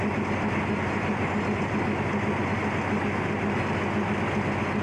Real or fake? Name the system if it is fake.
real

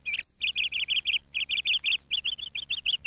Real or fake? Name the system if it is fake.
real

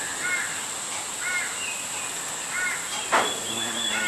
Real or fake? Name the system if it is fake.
real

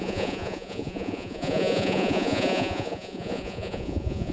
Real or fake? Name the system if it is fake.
fake, vocoder, Vocos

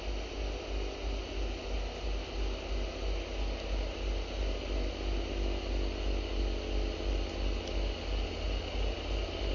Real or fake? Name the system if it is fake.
real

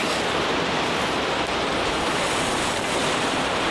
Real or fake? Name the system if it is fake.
real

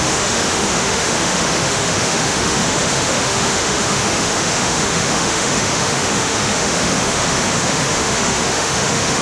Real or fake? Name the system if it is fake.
fake, autoencoder, DAC-VAE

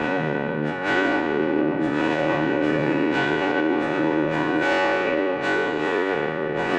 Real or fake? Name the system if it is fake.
fake, vocoder, Vocos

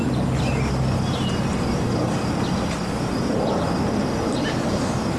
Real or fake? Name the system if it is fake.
real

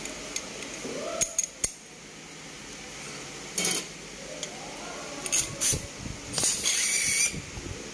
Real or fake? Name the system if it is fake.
real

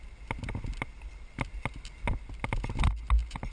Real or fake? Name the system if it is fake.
real